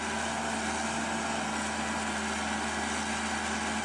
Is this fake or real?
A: real